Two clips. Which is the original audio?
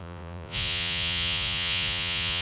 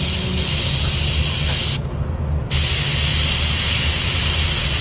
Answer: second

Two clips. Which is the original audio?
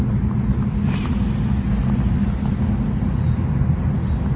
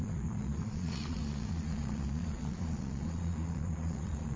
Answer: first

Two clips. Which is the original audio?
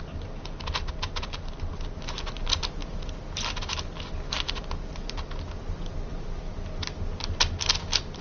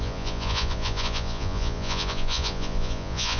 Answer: first